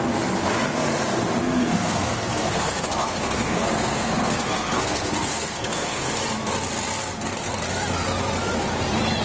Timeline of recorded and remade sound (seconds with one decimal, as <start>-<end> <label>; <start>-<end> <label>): 0.0-1.4 recorded; 1.4-6.2 remade; 6.2-9.2 recorded